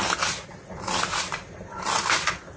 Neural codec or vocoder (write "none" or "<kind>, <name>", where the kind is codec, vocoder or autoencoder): none